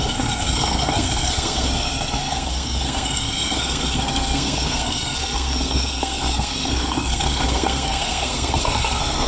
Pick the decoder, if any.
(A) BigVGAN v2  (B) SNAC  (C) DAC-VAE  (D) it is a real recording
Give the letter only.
B